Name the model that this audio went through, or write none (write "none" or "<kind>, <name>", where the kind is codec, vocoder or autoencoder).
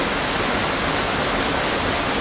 none